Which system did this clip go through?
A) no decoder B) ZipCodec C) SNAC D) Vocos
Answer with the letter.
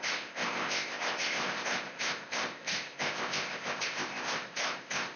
B